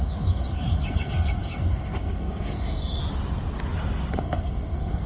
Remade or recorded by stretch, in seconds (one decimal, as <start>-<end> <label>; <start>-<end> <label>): 0.0-3.0 remade; 3.0-4.1 recorded; 4.1-5.1 remade